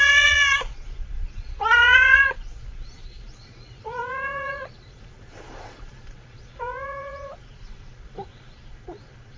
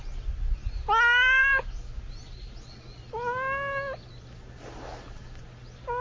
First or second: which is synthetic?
first